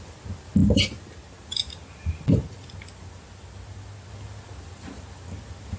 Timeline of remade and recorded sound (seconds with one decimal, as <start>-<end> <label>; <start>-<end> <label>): 0.0-5.8 recorded